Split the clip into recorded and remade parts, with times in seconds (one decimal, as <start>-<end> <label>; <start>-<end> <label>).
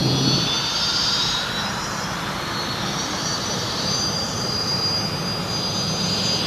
0.0-0.9 recorded; 0.9-4.8 remade; 4.8-6.5 recorded